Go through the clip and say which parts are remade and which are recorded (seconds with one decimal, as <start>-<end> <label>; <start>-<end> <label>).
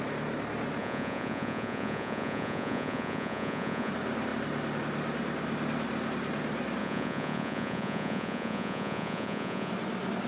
0.0-0.8 recorded; 0.8-3.9 remade; 3.9-6.8 recorded; 6.8-9.7 remade; 9.7-10.3 recorded